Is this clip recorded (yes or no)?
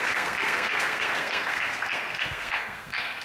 no